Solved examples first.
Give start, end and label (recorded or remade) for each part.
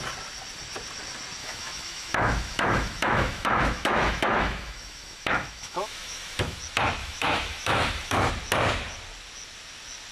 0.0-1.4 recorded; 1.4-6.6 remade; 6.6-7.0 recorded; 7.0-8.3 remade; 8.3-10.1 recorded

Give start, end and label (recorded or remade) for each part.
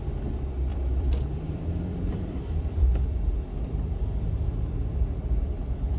0.0-0.7 recorded; 0.7-4.3 remade; 4.3-6.0 recorded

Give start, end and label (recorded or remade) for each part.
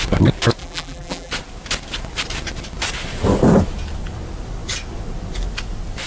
0.0-0.6 recorded; 0.6-1.3 remade; 1.3-6.1 recorded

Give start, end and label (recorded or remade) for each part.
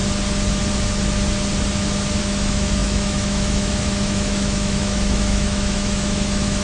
0.0-2.2 recorded; 2.2-6.6 remade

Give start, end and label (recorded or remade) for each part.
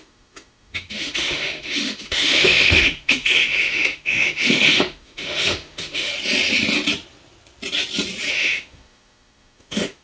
0.0-6.1 remade; 6.1-8.3 recorded; 8.3-10.0 remade